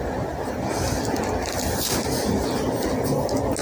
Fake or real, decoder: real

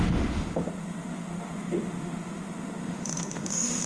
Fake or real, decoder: fake, autoencoder, DAC-VAE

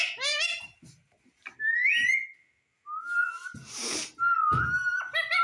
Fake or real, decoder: real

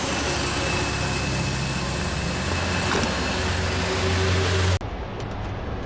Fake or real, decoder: real